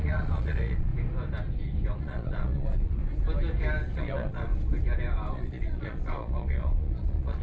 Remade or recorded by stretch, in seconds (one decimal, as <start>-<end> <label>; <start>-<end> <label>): 0.0-0.9 remade; 0.9-2.0 recorded; 2.0-3.0 remade; 3.0-3.9 recorded; 3.9-4.5 remade; 4.5-5.3 recorded; 5.3-7.4 remade